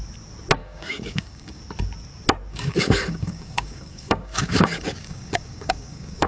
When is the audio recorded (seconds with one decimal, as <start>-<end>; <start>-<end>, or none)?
0.0-0.6; 1.6-2.5